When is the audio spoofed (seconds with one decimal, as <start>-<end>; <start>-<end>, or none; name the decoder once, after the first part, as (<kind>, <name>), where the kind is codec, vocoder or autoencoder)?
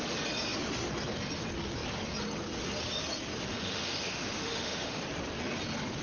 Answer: 3.5-5.0 (autoencoder, DAC-VAE)